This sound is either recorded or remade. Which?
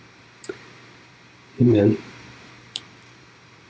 remade